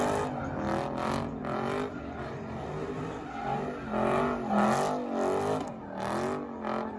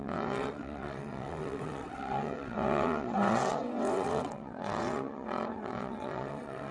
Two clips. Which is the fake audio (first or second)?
second